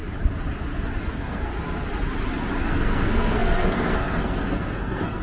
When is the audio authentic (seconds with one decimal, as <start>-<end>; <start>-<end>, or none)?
0.0-1.1; 1.5-2.6